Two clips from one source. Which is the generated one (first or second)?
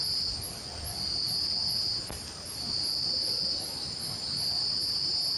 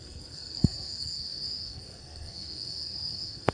second